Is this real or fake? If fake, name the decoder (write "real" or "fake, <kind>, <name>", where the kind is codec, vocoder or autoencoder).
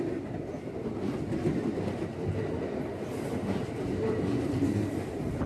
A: real